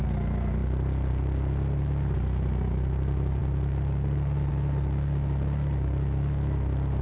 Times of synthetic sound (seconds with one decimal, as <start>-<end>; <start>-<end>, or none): none